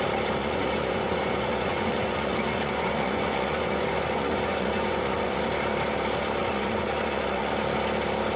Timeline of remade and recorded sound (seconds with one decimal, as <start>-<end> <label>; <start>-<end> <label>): 0.0-0.4 recorded; 0.4-5.4 remade; 5.4-6.4 recorded; 6.4-7.5 remade; 7.5-8.4 recorded